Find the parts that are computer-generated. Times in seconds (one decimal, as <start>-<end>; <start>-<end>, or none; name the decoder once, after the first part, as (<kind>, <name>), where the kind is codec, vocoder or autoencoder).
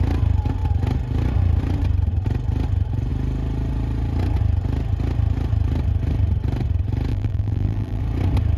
7.1-8.0 (vocoder, BigVGAN v2)